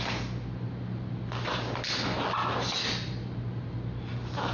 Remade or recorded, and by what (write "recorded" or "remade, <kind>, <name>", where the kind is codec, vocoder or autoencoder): recorded